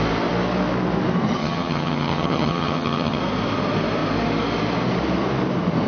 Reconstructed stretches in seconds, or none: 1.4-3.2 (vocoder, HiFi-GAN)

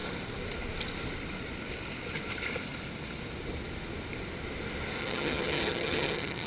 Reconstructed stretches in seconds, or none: 5.0-6.5 (vocoder, HiFi-GAN)

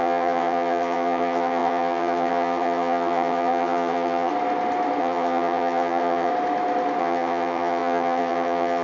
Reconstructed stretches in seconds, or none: 0.0-4.3 (vocoder, HiFi-GAN); 5.0-6.3; 7.0-8.8